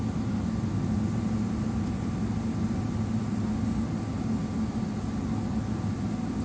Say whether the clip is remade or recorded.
recorded